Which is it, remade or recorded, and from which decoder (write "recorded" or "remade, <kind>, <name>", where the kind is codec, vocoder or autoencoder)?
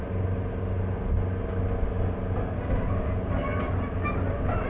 recorded